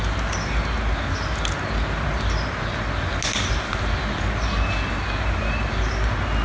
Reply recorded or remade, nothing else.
recorded